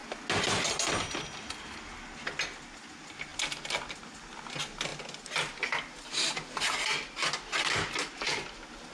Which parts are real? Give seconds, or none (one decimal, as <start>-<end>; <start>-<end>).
0.0-8.9